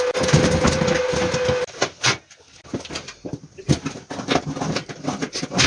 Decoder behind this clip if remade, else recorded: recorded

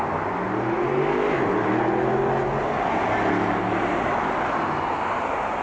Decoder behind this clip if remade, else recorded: recorded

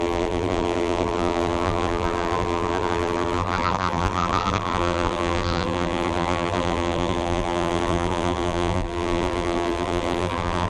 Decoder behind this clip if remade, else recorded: remade, vocoder, BigVGAN v2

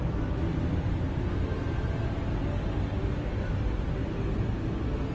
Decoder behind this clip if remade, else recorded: recorded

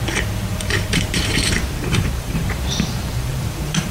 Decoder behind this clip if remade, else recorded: remade, vocoder, BigVGAN v2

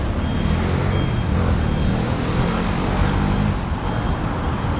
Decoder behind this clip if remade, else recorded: recorded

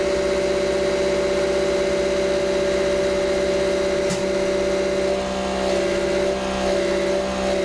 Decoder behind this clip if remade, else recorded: recorded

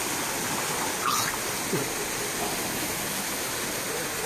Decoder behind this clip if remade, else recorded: remade, vocoder, BigVGAN v2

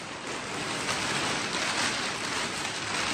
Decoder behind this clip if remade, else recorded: recorded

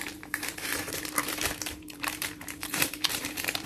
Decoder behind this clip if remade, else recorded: remade, vocoder, BigVGAN v2